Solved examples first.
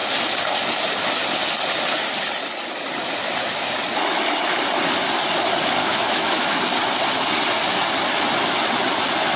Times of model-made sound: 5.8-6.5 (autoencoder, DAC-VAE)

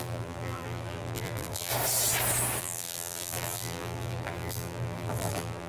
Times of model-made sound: 0.0-1.7 (vocoder, BigVGAN v2); 2.6-5.7

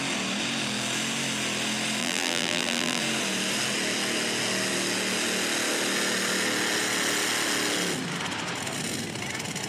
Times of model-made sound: 2.0-3.0 (vocoder, BigVGAN v2)